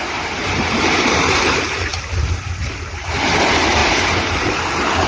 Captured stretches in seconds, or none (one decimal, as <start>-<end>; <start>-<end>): 1.9-2.6